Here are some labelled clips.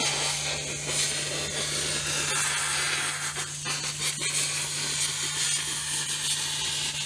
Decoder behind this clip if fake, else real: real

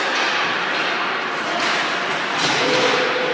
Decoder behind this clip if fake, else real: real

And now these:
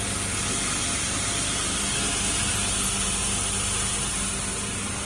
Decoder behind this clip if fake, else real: real